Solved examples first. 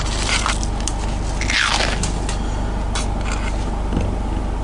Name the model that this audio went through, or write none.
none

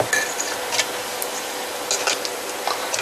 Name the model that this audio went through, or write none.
none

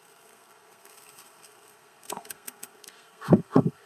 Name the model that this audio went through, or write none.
codec, SNAC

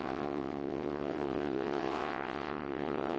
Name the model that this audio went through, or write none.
vocoder, WaveNeXt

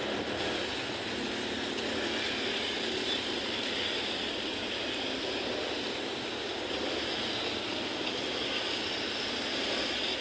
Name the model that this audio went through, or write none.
none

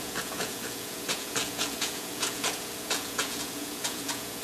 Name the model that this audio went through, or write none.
vocoder, Vocos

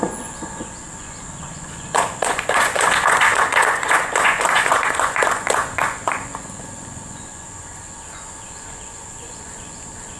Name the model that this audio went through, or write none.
vocoder, Vocos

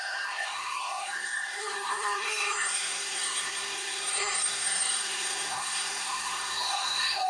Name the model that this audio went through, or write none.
codec, SNAC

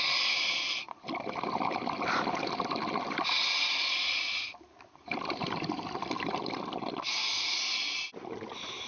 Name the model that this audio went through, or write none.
none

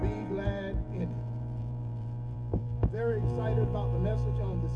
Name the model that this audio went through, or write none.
vocoder, BigVGAN v2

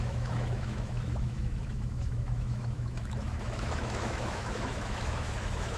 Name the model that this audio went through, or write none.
autoencoder, DAC-VAE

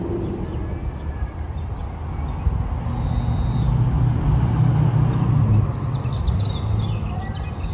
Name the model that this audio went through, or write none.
none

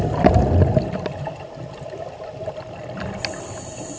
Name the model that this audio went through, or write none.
none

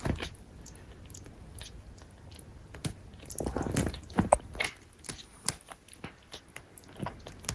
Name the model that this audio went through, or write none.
none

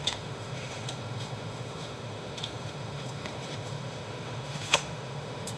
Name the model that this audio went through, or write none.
autoencoder, DAC-VAE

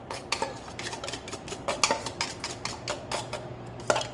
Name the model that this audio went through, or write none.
none